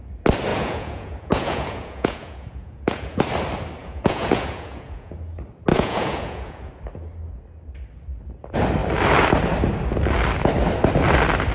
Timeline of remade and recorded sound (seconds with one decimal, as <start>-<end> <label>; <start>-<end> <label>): 0.0-0.5 recorded; 0.5-3.2 remade; 3.2-3.8 recorded; 3.8-5.1 remade; 5.1-5.7 recorded; 5.7-6.7 remade; 6.7-11.5 recorded

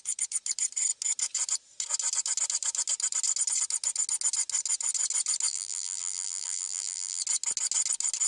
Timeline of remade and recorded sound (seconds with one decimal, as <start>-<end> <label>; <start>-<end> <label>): 0.0-5.5 recorded; 5.5-7.2 remade; 7.2-8.3 recorded

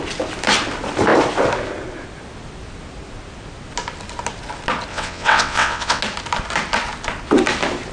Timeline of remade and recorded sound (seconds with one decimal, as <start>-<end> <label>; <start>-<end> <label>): 0.0-4.9 recorded; 4.9-6.0 remade; 6.0-7.9 recorded

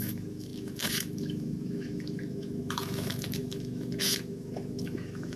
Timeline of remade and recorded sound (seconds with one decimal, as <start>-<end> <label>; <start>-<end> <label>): 0.0-5.4 remade

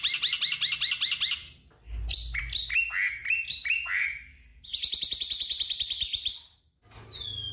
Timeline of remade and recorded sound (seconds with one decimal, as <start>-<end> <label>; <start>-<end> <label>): 0.0-7.5 recorded

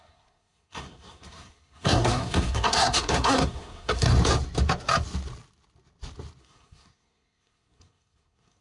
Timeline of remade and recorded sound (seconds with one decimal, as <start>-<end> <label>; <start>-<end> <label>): 0.0-4.1 remade; 4.1-6.4 recorded; 6.4-8.6 remade

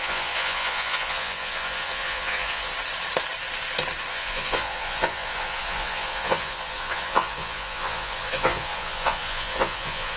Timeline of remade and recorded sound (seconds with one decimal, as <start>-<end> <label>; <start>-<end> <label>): 0.0-2.7 remade; 2.7-4.1 recorded; 4.1-10.2 remade